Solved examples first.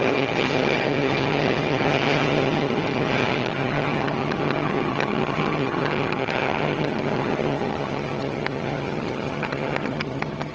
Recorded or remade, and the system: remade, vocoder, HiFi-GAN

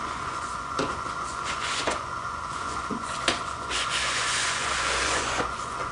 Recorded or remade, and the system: remade, vocoder, Vocos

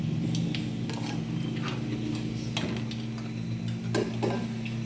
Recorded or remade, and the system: recorded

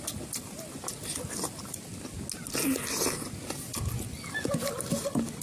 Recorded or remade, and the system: recorded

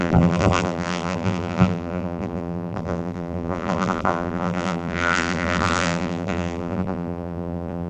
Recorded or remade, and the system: remade, vocoder, BigVGAN v2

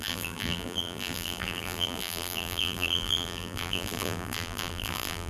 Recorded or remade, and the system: remade, vocoder, BigVGAN v2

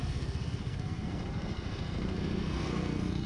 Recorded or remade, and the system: remade, codec, SNAC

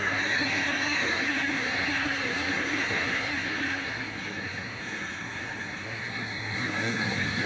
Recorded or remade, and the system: remade, codec, SNAC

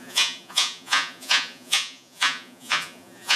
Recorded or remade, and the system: remade, vocoder, Vocos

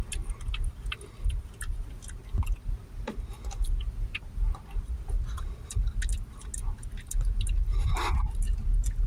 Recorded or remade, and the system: recorded